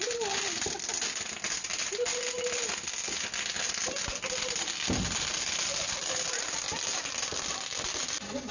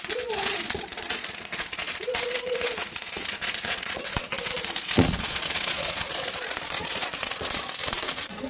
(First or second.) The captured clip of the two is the first